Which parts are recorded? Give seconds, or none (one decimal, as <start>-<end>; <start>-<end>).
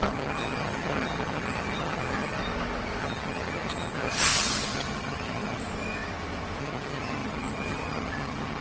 2.4-3.0; 5.6-6.6